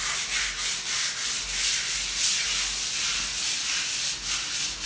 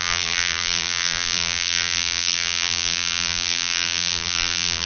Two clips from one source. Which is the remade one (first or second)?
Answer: second